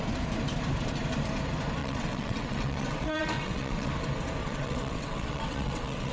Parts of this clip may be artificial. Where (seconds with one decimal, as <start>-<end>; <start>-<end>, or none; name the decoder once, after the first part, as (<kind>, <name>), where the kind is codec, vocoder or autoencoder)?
1.8-3.9 (vocoder, WaveNeXt); 4.4-6.1